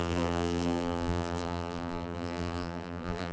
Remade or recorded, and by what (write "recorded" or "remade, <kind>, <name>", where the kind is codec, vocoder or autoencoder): remade, vocoder, BigVGAN v2